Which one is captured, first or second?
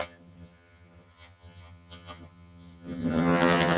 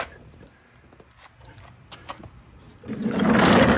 second